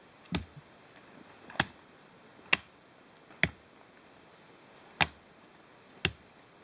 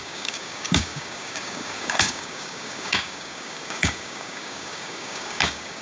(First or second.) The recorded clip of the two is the first